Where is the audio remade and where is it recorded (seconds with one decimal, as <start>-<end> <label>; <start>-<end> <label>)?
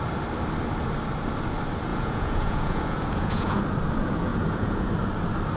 0.0-1.9 recorded; 1.9-3.6 remade; 3.6-4.3 recorded; 4.3-4.9 remade; 4.9-5.6 recorded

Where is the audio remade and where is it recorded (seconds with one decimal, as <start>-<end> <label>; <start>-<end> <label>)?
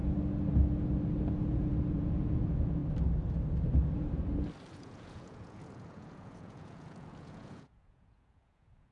0.0-1.5 recorded; 1.5-2.8 remade; 2.8-4.7 recorded; 4.7-8.9 remade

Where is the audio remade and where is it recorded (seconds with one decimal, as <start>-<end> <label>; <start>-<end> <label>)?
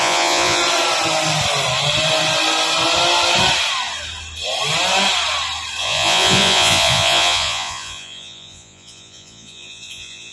0.0-0.6 remade; 0.6-5.8 recorded; 5.8-10.3 remade